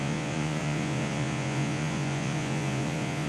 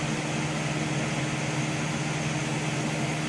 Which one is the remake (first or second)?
first